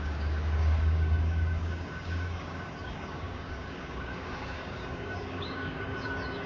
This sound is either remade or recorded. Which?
remade